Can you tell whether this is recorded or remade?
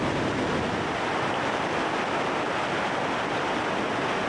recorded